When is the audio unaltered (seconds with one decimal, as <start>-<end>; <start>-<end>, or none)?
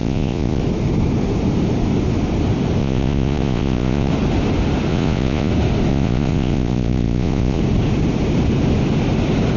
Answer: 0.6-2.8; 4.1-4.9; 5.5-5.9; 7.6-9.6